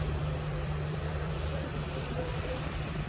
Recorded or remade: remade